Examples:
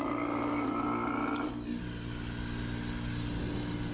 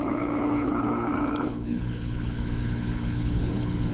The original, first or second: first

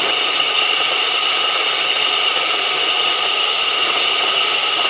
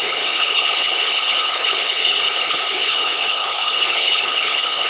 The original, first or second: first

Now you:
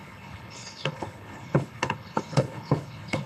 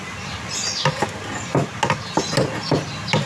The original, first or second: second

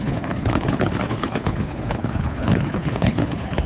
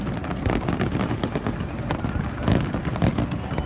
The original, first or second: second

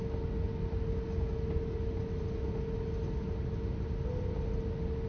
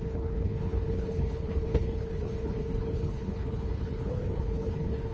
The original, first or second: first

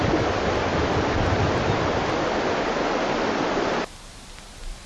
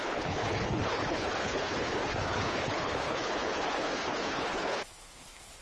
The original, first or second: first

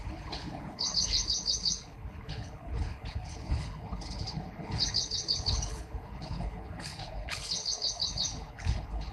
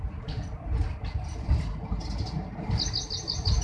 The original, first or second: second